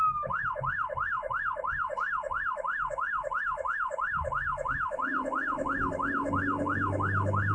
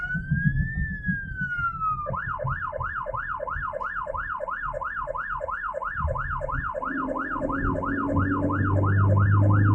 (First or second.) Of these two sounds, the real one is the second